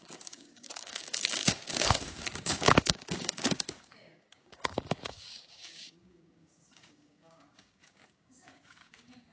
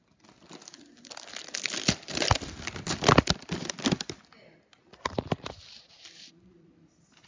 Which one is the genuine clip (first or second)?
second